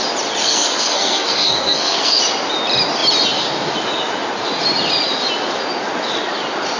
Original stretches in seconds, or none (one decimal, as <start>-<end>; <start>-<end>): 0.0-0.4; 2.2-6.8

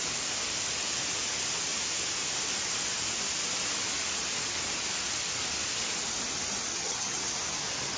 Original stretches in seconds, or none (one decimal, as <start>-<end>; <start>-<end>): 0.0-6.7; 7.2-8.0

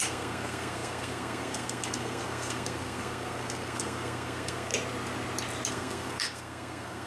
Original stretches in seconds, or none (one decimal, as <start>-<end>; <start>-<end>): 4.7-5.7